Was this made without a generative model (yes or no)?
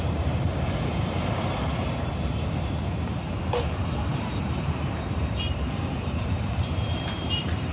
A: no